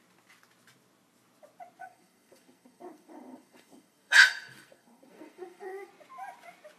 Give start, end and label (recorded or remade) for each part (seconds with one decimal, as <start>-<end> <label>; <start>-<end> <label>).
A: 0.0-1.8 recorded; 1.8-5.9 remade; 5.9-6.8 recorded